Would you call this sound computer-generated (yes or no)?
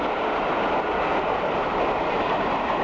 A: no